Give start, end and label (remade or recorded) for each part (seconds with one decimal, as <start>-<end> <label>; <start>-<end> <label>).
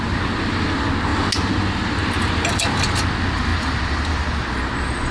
0.0-5.1 recorded